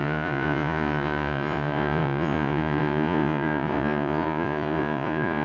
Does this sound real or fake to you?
fake